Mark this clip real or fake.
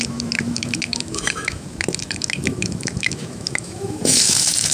fake